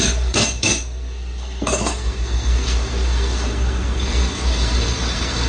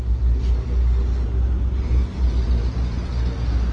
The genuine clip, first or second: second